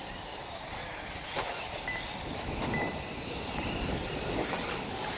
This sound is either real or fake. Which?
real